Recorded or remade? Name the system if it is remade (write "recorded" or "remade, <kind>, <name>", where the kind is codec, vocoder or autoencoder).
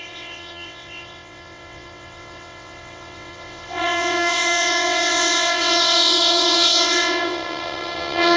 remade, vocoder, WaveNeXt